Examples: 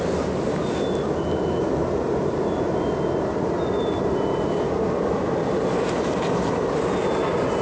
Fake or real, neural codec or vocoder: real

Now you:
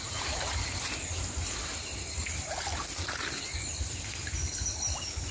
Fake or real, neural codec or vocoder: real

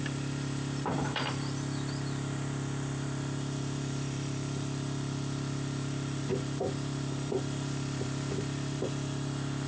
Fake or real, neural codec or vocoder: fake, vocoder, BigVGAN v2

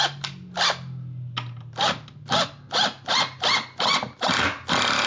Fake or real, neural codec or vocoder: real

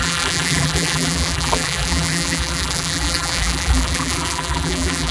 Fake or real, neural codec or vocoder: fake, vocoder, BigVGAN v2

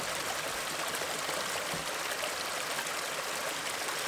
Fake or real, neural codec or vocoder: real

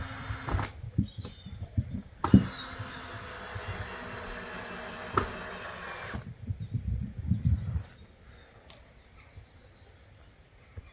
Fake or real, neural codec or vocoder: real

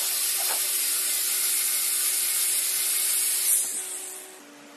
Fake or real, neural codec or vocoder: real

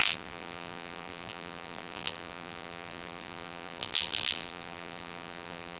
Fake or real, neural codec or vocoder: fake, vocoder, BigVGAN v2